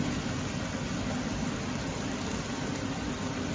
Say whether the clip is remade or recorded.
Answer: recorded